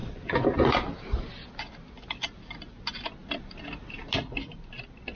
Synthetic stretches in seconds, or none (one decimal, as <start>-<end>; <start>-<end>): none